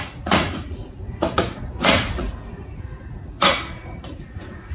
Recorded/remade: remade